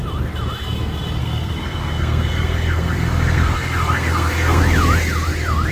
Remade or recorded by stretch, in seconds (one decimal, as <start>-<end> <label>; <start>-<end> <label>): 0.0-1.2 recorded; 1.2-4.6 remade; 4.6-5.7 recorded